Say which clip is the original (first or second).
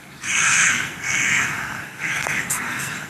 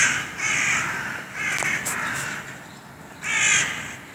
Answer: second